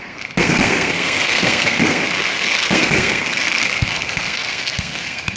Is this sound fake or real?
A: fake